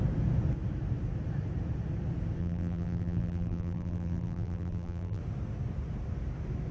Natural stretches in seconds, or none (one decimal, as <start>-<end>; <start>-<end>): 0.0-2.4; 5.2-6.7